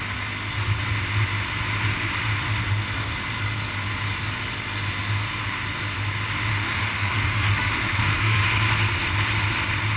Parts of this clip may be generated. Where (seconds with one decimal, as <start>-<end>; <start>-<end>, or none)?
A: 6.5-8.4

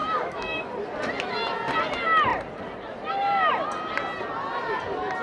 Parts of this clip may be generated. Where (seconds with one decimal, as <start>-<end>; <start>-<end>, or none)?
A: 0.0-0.7